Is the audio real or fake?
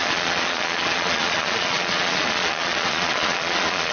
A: fake